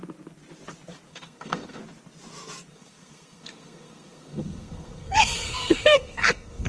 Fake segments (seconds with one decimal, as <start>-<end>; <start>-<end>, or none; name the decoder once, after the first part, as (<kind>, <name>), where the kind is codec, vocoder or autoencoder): 1.1-1.8 (codec, SNAC); 2.7-6.7